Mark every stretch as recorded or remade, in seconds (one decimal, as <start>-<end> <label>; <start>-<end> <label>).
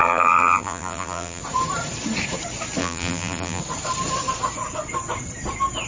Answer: 0.0-1.4 remade; 1.4-2.8 recorded; 2.8-3.6 remade; 3.6-5.9 recorded